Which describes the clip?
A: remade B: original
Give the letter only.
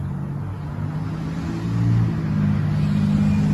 B